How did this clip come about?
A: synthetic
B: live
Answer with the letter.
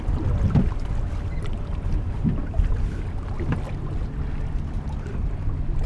B